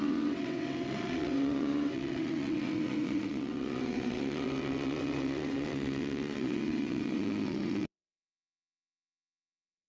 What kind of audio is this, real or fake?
fake